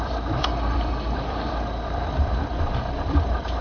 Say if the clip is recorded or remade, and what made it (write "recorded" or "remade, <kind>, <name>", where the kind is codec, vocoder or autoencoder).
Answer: remade, vocoder, BigVGAN v2